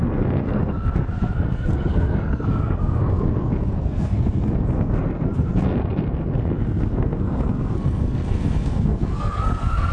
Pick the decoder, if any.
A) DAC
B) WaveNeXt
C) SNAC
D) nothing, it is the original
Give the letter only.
C